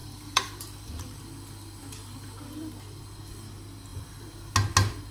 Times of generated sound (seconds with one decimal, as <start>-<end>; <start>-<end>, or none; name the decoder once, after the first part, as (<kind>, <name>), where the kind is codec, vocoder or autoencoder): 0.0-1.2 (vocoder, BigVGAN v2); 3.9-4.5